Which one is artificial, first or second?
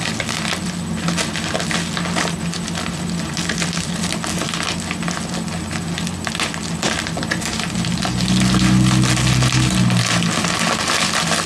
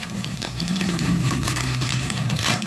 second